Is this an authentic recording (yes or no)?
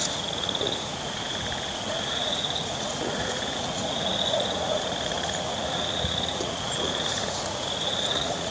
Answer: no